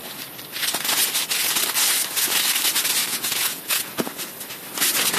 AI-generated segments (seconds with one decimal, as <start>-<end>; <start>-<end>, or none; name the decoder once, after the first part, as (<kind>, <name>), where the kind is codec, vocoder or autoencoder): 3.1-4.1 (vocoder, Vocos)

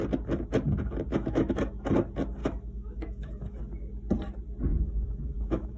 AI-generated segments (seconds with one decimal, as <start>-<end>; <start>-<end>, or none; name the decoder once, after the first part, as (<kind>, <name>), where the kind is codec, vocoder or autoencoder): 1.1-1.9 (autoencoder, DAC-VAE); 2.4-3.6; 4.7-5.8